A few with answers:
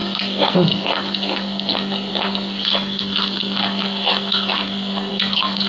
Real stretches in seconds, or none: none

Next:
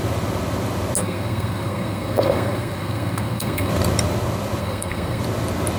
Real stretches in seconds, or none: 0.0-1.0; 3.7-4.6; 5.2-5.8